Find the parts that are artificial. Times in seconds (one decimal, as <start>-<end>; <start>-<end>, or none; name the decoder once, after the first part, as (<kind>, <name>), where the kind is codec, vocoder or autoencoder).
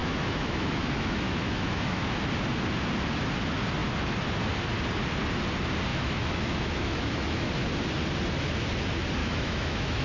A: 0.0-2.2 (autoencoder, DAC-VAE); 5.9-7.5; 9.2-10.0